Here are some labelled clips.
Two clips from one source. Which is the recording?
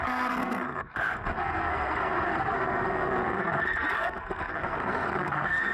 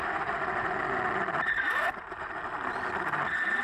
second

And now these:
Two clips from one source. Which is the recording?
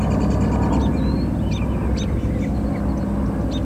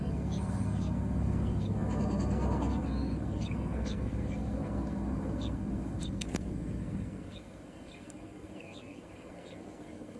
first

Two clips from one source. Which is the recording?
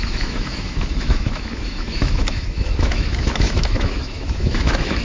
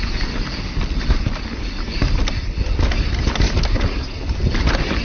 second